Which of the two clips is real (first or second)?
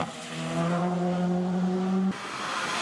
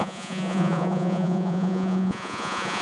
first